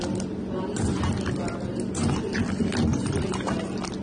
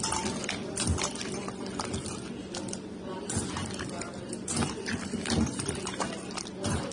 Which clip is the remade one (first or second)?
second